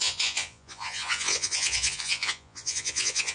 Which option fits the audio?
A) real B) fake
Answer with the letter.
B